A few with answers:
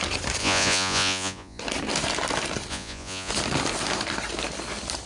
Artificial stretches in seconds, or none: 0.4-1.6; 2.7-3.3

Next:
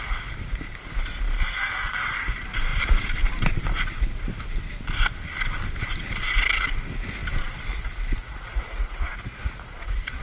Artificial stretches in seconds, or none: 8.2-10.2

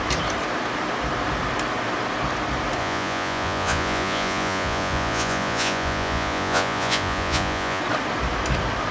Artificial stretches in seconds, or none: 2.8-7.8

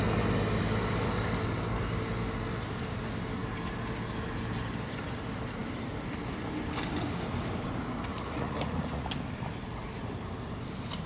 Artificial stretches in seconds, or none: 8.1-9.1

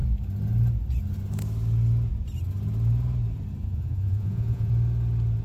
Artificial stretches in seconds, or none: 3.6-4.7